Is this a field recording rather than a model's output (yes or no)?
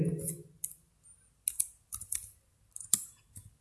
yes